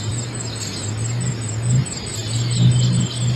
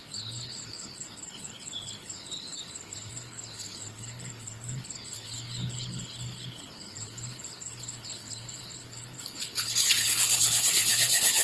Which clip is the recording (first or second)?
first